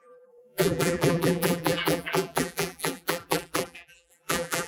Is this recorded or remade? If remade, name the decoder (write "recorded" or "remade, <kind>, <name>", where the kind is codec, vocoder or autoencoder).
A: remade, vocoder, BigVGAN v2